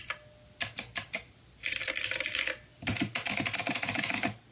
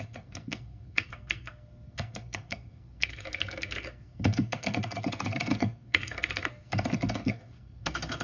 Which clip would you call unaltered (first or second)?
first